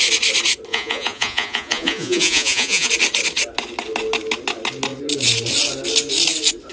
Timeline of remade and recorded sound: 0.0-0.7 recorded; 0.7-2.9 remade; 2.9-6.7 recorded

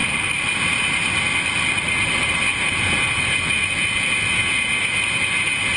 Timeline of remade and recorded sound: 0.0-2.5 recorded; 2.5-5.8 remade